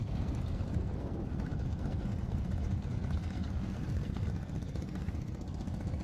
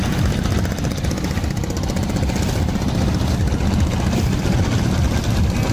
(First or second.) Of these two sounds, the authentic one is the second